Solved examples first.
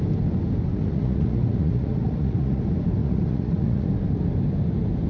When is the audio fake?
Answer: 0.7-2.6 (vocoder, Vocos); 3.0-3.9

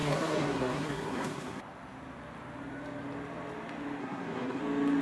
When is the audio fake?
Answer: 0.0-1.6 (codec, SNAC); 4.0-4.6

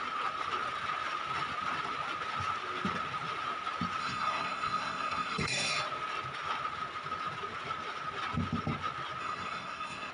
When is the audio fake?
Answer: 4.0-5.7 (codec, SNAC); 9.2-10.1

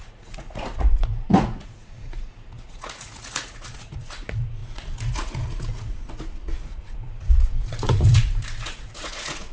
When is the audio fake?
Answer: 0.0-9.5 (vocoder, Vocos)

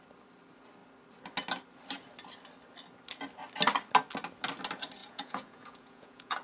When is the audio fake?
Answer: 5.0-6.4 (vocoder, Vocos)

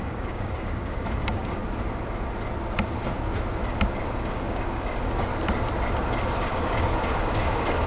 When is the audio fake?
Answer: 0.0-1.6 (codec, DAC); 4.2-5.3; 6.3-7.9

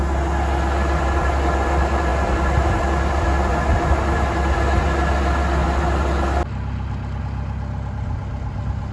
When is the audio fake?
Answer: none

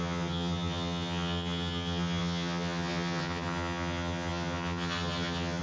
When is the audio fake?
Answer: 0.0-5.6 (vocoder, HiFi-GAN)